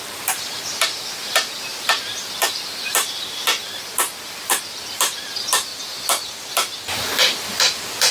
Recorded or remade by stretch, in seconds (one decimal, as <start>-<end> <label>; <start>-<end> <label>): 0.0-1.7 recorded; 1.7-4.6 remade; 4.6-8.1 recorded